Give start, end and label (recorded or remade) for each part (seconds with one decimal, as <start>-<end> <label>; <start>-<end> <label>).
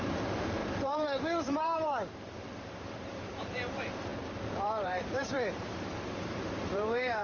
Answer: 0.0-7.2 remade